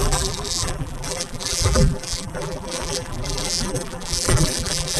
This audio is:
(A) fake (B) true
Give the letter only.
A